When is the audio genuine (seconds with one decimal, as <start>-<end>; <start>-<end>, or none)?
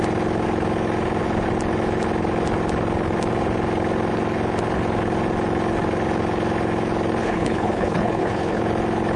0.0-7.2; 8.6-9.2